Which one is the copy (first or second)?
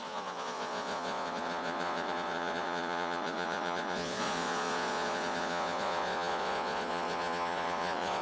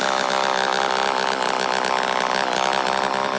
first